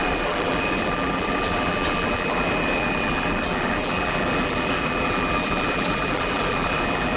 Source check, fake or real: fake